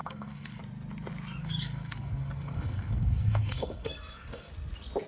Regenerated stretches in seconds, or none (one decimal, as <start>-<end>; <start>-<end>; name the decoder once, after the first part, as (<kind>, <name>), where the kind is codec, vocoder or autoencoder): 0.0-0.6 (codec, SNAC); 1.4-4.5